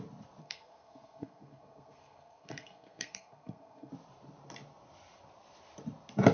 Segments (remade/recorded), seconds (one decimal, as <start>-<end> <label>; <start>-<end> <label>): 0.0-0.4 recorded; 0.4-3.9 remade; 3.9-6.3 recorded